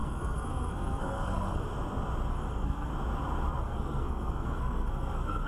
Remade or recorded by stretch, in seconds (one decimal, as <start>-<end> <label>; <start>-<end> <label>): 0.0-1.7 remade; 1.7-2.3 recorded; 2.3-2.9 remade; 2.9-3.6 recorded; 3.6-5.5 remade